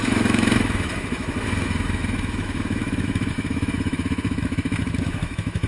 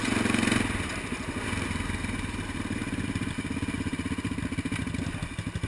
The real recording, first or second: second